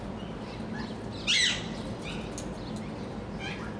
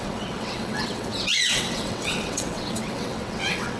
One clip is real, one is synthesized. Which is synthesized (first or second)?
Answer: second